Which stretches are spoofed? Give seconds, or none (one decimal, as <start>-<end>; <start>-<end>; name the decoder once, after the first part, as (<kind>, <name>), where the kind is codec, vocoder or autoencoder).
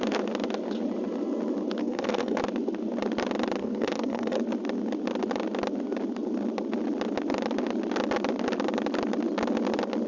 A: 1.8-2.4 (codec, SNAC); 3.6-4.4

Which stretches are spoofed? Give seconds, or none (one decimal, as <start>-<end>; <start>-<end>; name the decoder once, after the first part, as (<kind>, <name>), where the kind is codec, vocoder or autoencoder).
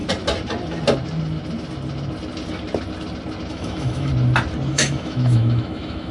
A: 3.5-4.1 (autoencoder, DAC-VAE); 4.7-6.1